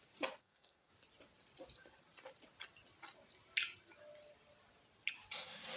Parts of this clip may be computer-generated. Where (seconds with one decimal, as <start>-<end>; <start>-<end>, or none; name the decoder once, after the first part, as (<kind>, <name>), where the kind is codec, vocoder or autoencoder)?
0.4-0.9 (codec, SNAC)